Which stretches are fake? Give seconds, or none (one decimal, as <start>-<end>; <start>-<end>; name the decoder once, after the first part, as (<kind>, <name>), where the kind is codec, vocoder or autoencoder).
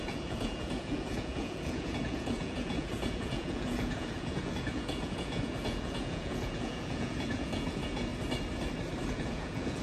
0.0-8.1 (vocoder, Vocos); 9.1-9.8